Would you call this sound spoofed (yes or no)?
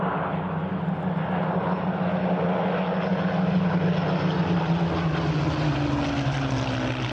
no